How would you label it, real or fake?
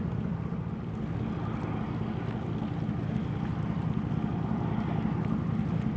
real